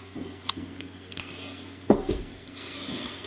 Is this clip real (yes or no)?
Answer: no